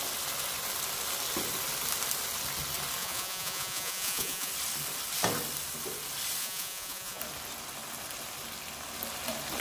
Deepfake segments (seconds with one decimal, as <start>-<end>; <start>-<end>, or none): 3.0-4.5; 6.4-7.2